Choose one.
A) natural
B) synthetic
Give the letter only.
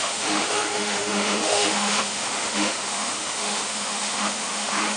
B